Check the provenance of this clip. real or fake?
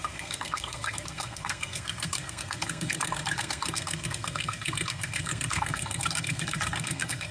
fake